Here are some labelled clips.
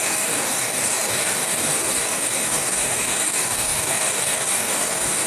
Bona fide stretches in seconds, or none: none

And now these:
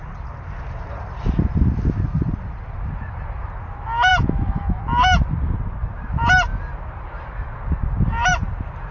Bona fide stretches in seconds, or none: 0.0-4.1; 4.8-8.9

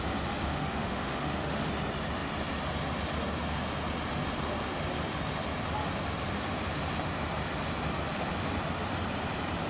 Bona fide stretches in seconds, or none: 0.0-0.5; 1.7-9.7

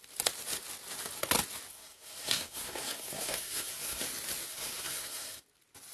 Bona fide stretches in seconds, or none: 0.0-1.7; 4.0-4.5; 5.4-5.9

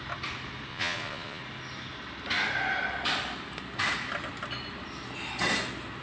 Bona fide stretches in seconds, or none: 0.0-0.7; 1.4-6.0

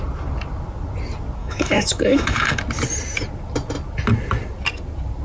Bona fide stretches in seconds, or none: 0.0-1.4; 2.6-5.2

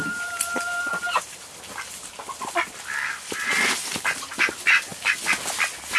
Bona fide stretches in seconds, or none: 0.0-6.0